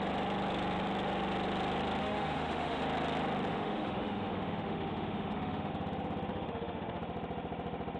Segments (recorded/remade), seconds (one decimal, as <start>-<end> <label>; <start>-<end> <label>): 0.0-2.0 recorded; 2.0-2.8 remade; 2.8-3.5 recorded; 3.5-5.7 remade; 5.7-6.3 recorded; 6.3-7.0 remade; 7.0-8.0 recorded